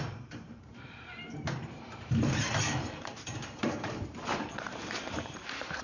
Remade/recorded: remade